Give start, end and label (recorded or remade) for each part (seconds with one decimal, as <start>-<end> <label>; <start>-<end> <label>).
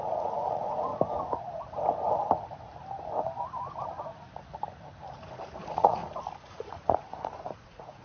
0.0-0.9 remade; 0.9-5.6 recorded; 5.6-6.0 remade; 6.0-6.5 recorded; 6.5-8.0 remade